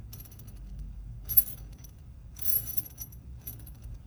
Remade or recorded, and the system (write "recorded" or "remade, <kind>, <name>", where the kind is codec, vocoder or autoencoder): remade, codec, DAC